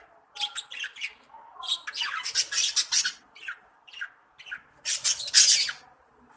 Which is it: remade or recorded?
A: recorded